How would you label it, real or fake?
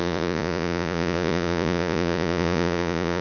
fake